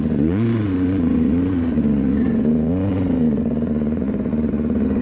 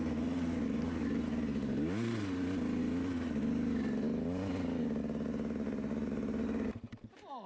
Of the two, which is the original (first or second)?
second